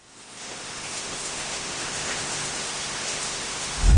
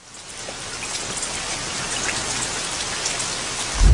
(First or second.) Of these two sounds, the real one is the second